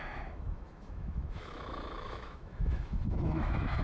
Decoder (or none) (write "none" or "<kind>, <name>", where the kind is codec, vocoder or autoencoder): autoencoder, DAC-VAE